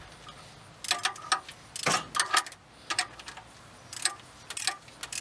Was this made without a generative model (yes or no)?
yes